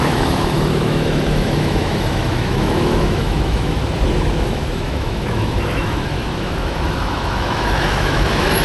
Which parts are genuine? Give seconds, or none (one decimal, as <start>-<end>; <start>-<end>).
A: 3.8-4.4